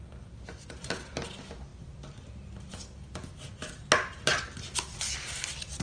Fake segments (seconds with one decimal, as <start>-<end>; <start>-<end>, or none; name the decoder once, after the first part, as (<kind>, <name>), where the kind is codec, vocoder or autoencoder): none